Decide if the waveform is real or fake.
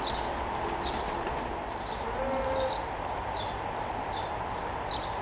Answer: real